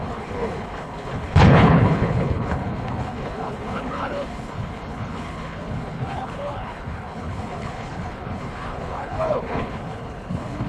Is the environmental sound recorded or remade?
remade